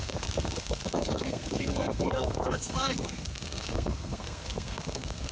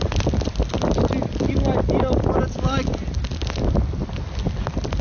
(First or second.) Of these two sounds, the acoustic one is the second